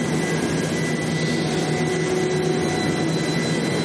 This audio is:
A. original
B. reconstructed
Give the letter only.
A